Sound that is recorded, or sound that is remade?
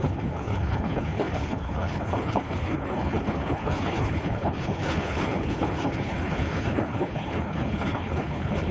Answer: remade